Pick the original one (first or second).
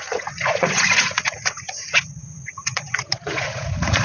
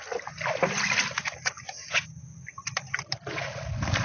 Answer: second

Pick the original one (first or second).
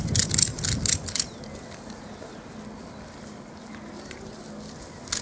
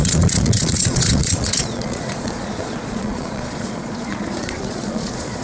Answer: first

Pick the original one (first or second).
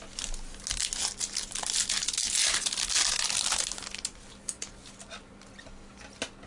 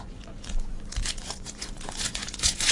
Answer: first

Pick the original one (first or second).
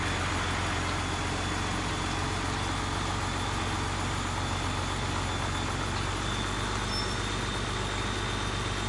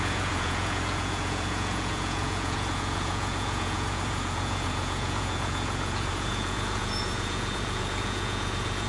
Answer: first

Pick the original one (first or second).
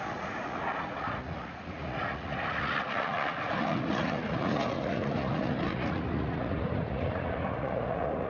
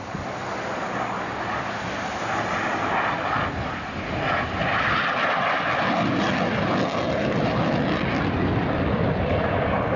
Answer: second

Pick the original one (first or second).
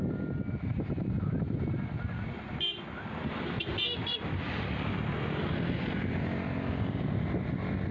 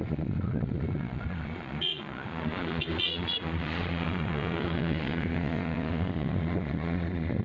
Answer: first